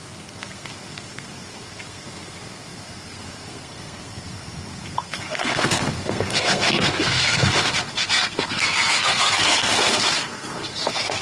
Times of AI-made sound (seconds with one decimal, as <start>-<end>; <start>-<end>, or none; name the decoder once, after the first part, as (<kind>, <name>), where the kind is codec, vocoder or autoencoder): 0.0-11.2 (codec, SNAC)